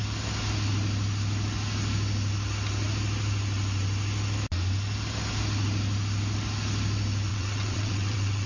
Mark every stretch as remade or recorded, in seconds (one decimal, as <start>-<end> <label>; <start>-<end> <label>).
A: 0.0-7.3 recorded; 7.3-8.5 remade